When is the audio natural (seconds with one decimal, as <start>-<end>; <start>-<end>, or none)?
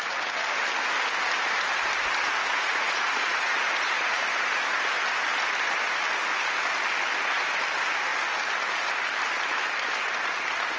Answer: 0.0-2.4; 4.5-10.8